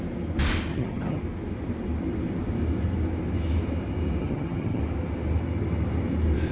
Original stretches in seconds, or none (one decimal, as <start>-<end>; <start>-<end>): 0.0-0.7; 1.2-4.2; 4.8-6.5